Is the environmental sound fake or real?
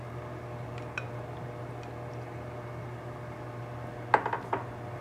real